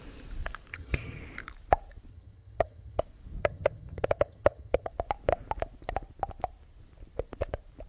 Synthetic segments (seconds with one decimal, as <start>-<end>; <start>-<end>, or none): 0.7-1.2; 2.1-3.0; 3.4-4.9